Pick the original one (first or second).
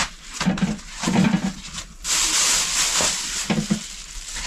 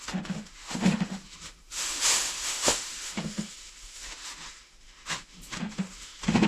first